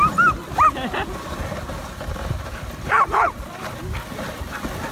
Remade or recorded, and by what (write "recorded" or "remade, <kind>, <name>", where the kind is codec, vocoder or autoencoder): recorded